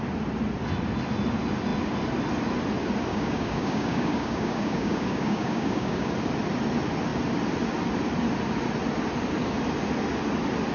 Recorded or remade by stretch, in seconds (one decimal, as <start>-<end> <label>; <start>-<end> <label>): 0.0-3.1 recorded; 3.1-6.1 remade; 6.1-10.7 recorded